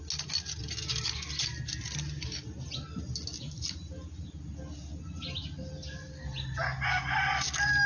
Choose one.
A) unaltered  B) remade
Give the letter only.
A